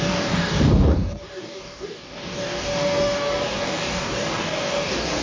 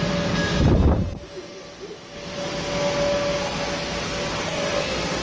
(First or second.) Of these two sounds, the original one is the second